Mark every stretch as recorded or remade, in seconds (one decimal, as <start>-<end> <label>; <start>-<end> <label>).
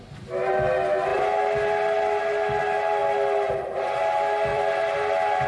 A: 0.0-4.5 recorded; 4.5-5.1 remade; 5.1-5.5 recorded